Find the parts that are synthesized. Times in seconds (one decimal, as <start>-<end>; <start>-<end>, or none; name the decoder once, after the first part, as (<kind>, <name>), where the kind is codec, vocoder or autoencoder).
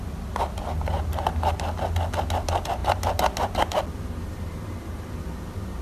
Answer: none